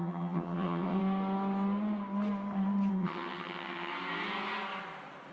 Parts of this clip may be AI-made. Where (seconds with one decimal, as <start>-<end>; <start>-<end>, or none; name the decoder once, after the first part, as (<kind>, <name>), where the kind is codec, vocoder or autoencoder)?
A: 0.0-1.0 (vocoder, HiFi-GAN); 2.9-3.9